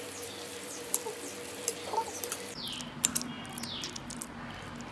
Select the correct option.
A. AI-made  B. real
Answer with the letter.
A